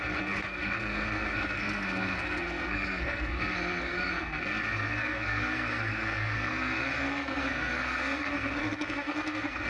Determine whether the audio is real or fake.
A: fake